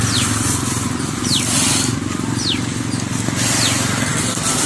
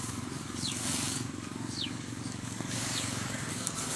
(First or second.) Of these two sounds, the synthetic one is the second